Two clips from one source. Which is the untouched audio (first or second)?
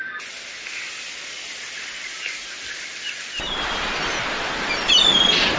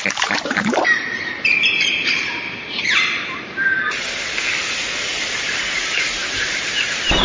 first